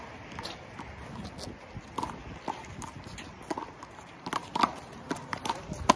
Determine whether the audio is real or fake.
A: real